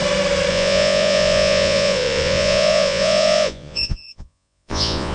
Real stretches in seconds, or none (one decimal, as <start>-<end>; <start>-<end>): 0.0-0.5